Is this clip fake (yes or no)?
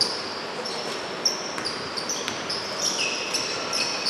yes